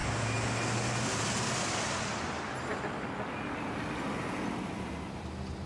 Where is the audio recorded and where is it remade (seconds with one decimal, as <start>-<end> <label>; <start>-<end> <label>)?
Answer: 0.0-5.7 recorded